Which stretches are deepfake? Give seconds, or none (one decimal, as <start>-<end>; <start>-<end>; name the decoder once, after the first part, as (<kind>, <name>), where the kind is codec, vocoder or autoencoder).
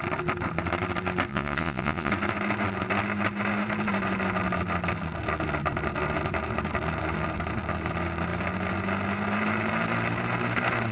1.3-2.1 (vocoder, Vocos)